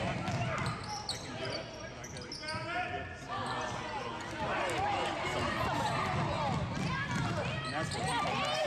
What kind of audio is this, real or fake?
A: real